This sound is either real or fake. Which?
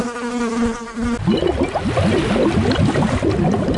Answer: real